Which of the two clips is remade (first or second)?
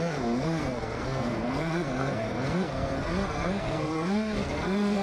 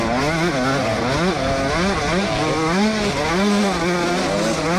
first